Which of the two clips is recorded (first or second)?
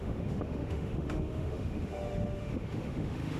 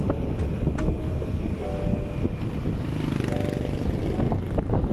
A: second